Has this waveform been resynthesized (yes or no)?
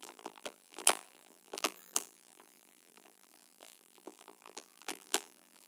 yes